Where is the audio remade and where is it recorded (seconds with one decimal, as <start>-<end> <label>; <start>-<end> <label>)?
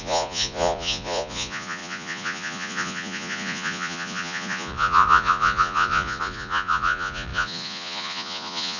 0.0-8.8 remade